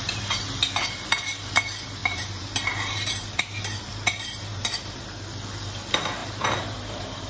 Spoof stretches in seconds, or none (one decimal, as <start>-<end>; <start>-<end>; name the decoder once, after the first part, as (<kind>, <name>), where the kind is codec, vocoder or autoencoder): 2.0-3.4 (vocoder, BigVGAN v2); 4.5-5.0; 6.2-7.3